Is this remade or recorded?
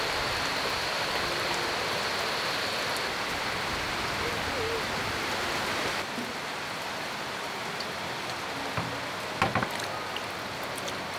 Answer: recorded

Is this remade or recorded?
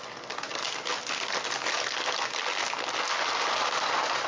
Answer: recorded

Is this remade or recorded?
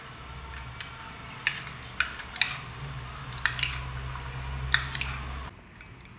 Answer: recorded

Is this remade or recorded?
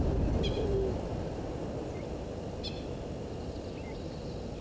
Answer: recorded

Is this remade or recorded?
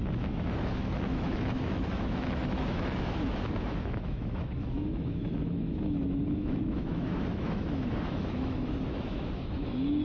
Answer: remade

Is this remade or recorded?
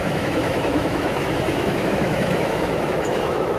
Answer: remade